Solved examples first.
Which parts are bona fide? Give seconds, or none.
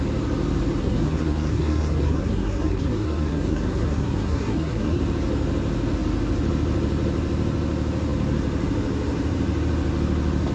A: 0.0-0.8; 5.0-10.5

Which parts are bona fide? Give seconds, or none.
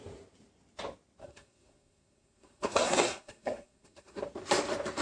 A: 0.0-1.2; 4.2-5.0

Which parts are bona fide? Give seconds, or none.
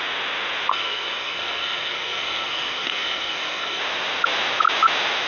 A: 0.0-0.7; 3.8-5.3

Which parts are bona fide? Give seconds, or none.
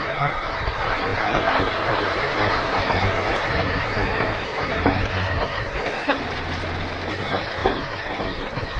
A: 6.2-7.1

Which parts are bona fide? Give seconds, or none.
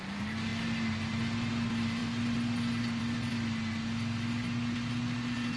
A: 0.0-5.6